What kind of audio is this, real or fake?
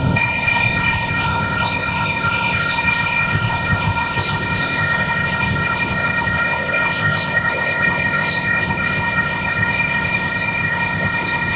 fake